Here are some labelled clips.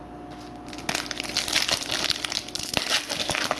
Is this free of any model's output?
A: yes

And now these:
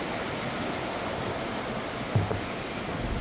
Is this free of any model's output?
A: yes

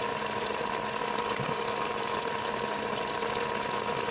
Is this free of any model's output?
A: no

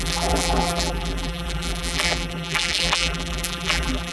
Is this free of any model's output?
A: no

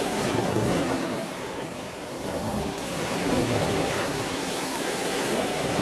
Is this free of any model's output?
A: no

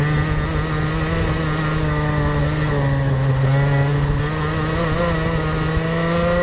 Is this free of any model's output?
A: yes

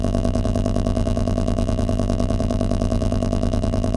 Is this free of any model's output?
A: no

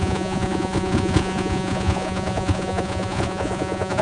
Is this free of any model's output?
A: no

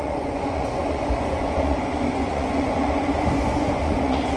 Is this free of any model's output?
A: no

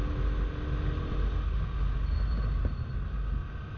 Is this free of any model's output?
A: yes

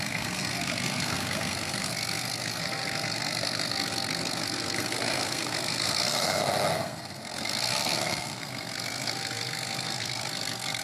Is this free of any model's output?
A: no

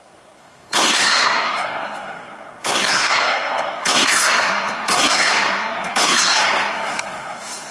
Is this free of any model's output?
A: no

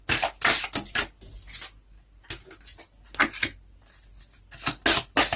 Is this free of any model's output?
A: yes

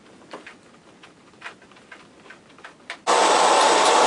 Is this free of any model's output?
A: yes